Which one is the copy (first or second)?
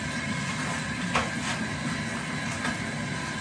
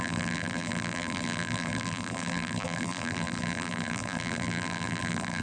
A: second